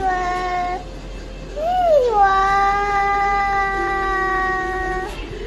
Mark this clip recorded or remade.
recorded